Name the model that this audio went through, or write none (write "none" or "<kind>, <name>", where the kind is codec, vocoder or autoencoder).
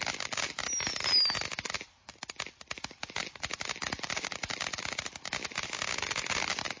none